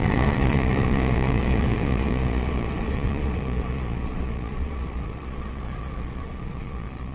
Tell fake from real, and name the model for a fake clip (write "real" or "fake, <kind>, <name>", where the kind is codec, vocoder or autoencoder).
fake, vocoder, Vocos